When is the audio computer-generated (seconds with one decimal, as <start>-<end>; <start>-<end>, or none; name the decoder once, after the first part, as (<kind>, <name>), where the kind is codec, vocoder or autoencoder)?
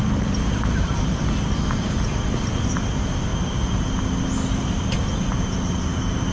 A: 0.0-2.2 (vocoder, BigVGAN v2)